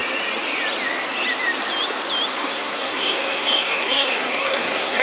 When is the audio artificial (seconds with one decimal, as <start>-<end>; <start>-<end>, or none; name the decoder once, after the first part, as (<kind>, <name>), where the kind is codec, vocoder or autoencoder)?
2.3-5.0 (codec, SNAC)